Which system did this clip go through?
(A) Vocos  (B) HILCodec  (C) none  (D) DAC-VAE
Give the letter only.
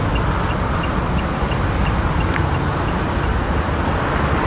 C